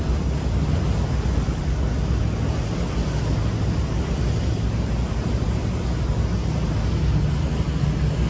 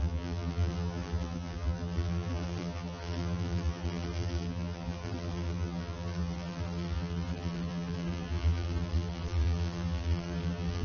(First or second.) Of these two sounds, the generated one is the second